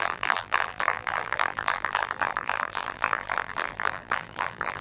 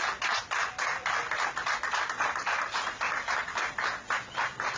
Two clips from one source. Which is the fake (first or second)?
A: first